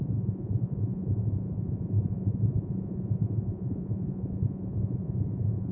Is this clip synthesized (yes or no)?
yes